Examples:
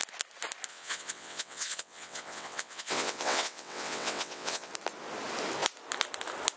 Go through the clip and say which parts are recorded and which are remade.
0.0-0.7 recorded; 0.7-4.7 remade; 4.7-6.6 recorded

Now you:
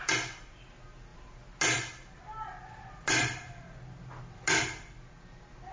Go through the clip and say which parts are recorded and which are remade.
0.0-5.7 recorded